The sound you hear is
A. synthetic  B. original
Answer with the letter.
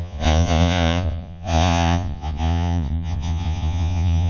A